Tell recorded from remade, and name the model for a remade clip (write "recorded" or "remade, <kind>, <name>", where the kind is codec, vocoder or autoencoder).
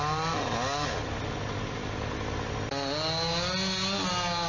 recorded